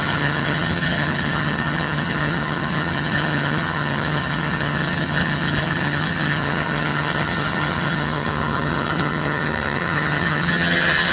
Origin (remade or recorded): remade